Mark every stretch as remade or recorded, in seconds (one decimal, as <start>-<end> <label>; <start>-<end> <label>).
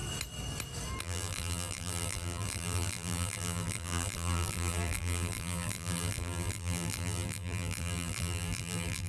0.0-1.0 recorded; 1.0-9.1 remade